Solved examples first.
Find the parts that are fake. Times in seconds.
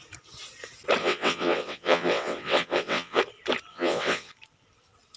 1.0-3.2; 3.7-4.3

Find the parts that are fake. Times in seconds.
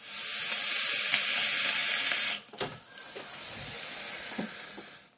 none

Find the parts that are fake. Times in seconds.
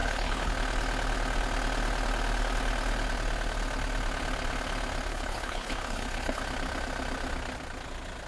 0.0-0.5; 5.1-6.4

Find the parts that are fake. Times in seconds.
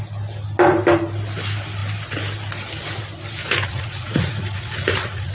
3.4-5.3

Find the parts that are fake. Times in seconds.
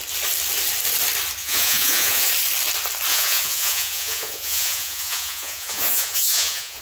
1.4-2.3; 3.1-6.8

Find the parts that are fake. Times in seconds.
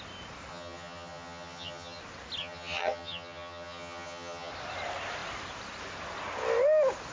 0.5-2.0; 2.4-4.5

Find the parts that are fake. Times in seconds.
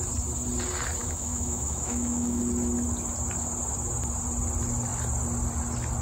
1.0-2.4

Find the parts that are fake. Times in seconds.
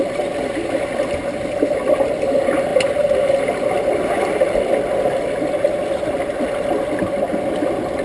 none